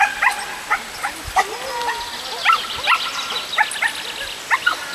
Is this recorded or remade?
recorded